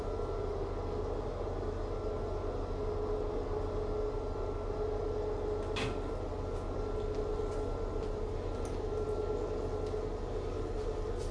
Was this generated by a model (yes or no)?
no